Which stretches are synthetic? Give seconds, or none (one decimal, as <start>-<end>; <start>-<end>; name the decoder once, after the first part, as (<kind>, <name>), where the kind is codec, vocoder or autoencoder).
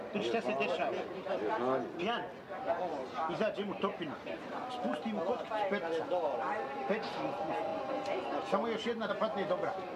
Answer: none